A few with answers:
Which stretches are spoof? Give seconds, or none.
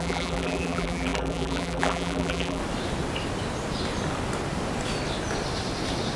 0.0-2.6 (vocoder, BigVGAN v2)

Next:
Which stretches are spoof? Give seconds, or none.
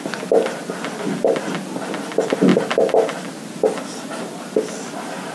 none